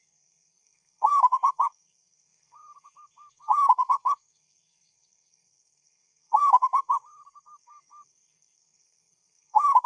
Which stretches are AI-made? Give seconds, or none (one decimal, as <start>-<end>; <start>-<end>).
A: 0.0-9.9